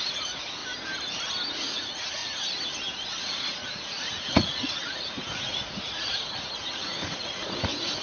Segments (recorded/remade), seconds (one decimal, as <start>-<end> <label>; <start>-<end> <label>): 0.0-0.6 remade; 0.6-1.5 recorded; 1.5-2.2 remade; 2.2-3.2 recorded; 3.2-8.0 remade